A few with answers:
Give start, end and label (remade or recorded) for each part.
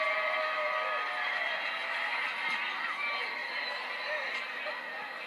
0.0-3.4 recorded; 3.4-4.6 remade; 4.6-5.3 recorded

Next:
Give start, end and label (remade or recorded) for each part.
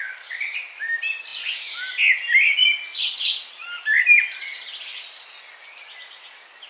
0.0-6.7 recorded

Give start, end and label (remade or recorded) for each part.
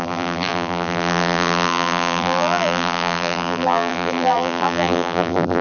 0.0-5.6 remade